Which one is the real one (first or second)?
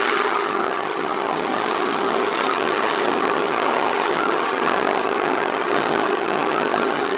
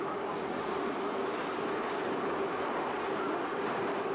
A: second